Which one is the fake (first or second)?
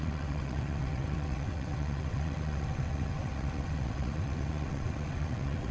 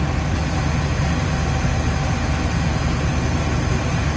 first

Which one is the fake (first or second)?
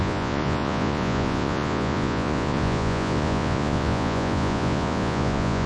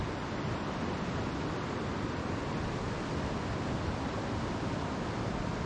first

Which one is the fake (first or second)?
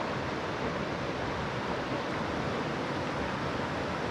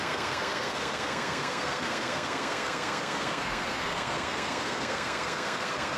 second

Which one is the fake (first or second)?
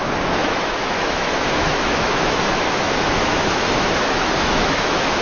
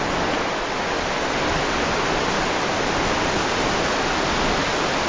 first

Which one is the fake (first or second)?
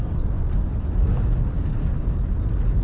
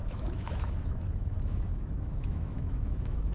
second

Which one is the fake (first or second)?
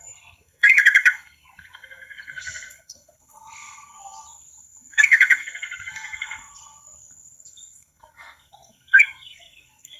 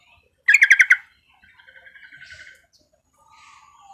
first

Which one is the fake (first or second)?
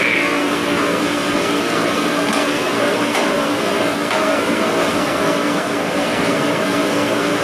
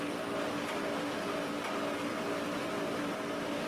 first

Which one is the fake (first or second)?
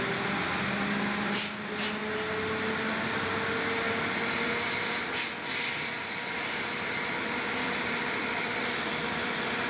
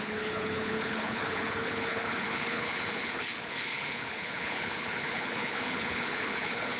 second